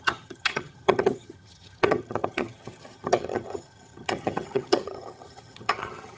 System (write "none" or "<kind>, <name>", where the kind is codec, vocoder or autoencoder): vocoder, HiFi-GAN